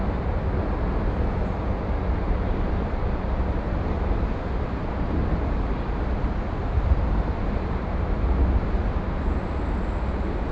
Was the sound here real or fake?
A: real